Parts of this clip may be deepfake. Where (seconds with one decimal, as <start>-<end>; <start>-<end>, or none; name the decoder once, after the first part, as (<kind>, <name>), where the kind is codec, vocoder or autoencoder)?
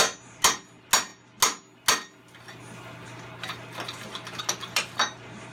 none